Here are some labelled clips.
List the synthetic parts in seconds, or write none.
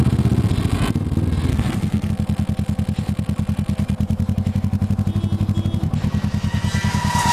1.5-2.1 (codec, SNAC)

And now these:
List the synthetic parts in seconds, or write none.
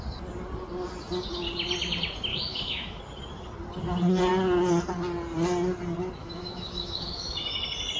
2.3-3.0 (autoencoder, DAC-VAE); 6.2-7.6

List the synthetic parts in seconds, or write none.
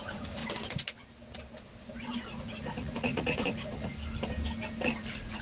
0.0-0.4 (vocoder, Vocos); 2.4-3.9; 5.0-5.4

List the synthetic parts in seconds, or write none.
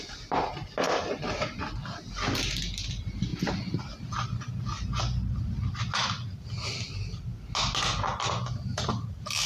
8.2-8.9 (vocoder, BigVGAN v2)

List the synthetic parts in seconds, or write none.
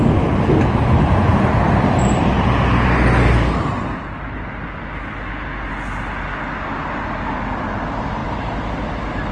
none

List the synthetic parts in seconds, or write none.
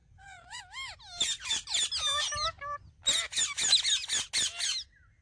0.0-0.6 (vocoder, Vocos)